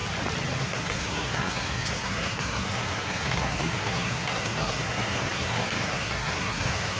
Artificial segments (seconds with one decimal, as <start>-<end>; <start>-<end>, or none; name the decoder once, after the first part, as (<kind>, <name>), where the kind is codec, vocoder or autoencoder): 0.6-7.0 (codec, SNAC)